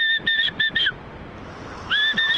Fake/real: real